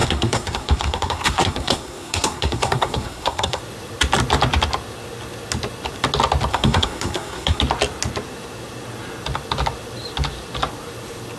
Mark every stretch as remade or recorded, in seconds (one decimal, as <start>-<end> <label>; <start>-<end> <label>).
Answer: 0.0-3.6 remade; 3.6-6.5 recorded; 6.5-7.6 remade; 7.6-11.4 recorded